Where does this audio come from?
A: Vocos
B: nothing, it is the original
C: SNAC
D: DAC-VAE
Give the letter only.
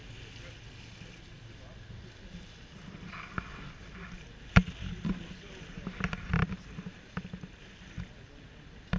B